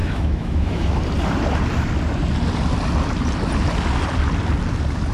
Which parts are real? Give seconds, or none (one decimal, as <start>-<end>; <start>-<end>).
1.0-5.1